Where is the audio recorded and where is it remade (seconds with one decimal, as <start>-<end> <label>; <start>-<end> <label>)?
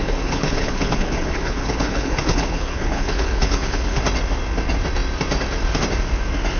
0.0-4.0 remade; 4.0-6.6 recorded